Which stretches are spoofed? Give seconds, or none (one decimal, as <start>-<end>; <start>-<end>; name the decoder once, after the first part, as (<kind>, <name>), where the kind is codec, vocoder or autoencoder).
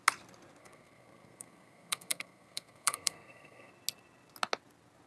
0.6-3.7 (codec, SNAC)